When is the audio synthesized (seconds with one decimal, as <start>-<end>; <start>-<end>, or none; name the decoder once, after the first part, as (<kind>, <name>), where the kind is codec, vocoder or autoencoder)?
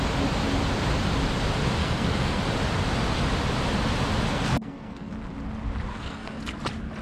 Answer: 1.8-2.4 (codec, SNAC); 4.3-5.1; 5.9-6.4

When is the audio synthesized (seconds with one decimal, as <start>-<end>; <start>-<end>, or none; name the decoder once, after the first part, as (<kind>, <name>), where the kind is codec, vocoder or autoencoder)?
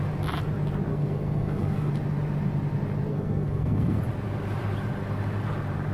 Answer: 0.9-1.9 (codec, SNAC); 3.1-4.0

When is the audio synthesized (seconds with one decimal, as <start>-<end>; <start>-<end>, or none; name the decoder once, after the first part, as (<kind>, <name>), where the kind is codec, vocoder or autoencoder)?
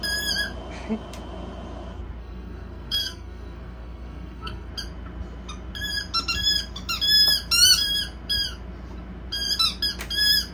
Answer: 2.2-4.7 (codec, SNAC)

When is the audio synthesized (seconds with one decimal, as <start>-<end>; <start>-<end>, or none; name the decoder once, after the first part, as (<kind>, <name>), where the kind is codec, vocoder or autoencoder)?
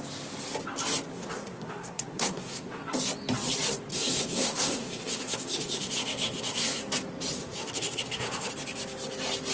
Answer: 1.1-2.8 (codec, SNAC); 3.9-6.8; 7.4-8.5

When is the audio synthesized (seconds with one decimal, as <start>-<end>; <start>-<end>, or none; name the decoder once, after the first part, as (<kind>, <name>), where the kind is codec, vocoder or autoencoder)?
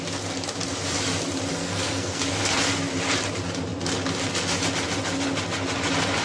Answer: 1.5-2.2 (codec, SNAC)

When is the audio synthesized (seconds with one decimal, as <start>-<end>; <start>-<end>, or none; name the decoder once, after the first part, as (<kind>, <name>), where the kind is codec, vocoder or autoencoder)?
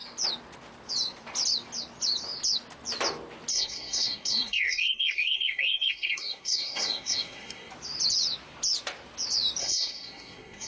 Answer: 3.5-7.7 (codec, SNAC); 9.6-10.7